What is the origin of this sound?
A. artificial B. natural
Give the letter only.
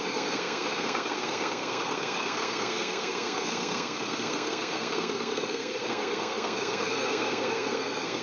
A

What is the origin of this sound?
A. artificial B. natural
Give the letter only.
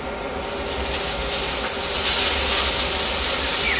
B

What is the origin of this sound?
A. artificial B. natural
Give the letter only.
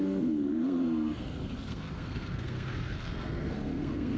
A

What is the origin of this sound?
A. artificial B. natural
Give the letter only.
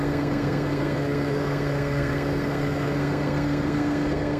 A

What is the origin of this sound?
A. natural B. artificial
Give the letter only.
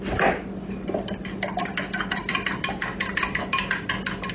A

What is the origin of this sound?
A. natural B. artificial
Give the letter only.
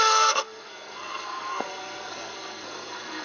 B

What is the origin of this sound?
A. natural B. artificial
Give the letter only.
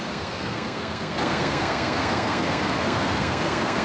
B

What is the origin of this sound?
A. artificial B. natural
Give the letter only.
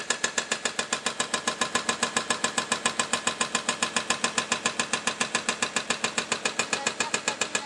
B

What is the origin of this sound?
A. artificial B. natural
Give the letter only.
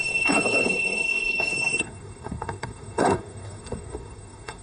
A